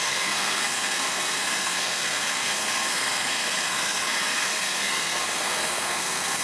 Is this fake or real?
fake